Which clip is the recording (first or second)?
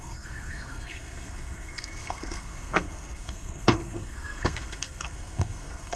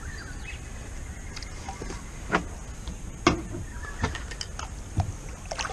second